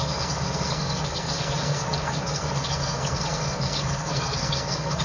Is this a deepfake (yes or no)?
yes